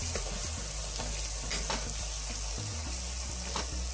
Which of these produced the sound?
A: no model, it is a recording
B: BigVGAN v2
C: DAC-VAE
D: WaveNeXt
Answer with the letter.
A